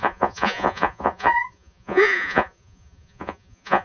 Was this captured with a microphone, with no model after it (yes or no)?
no